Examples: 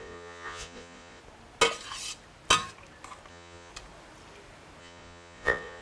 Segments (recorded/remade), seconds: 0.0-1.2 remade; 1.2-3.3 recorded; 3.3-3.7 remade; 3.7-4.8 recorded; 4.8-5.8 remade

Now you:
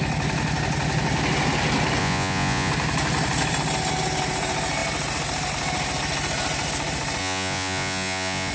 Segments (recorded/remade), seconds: 0.0-2.0 recorded; 2.0-2.7 remade; 2.7-7.2 recorded; 7.2-8.5 remade

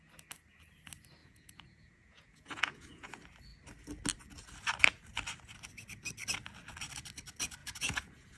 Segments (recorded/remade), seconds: 0.0-1.2 recorded; 1.2-3.1 remade; 3.1-7.6 recorded; 7.6-8.4 remade